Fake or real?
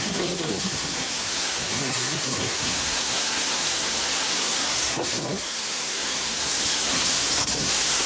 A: fake